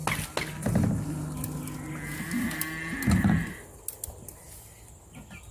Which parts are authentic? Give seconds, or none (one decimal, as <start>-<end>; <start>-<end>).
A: 0.0-5.5